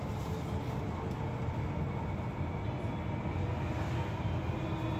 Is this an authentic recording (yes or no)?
yes